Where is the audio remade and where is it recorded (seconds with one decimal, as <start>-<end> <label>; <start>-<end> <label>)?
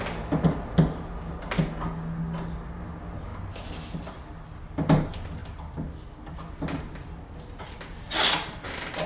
0.0-9.1 recorded